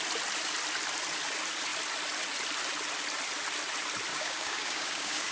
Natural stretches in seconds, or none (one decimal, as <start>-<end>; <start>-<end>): 0.0-4.1